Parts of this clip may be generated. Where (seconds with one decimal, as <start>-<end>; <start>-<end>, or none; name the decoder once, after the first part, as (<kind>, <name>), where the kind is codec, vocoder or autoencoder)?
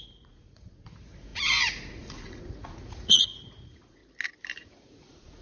0.0-4.0 (vocoder, Vocos); 4.6-5.4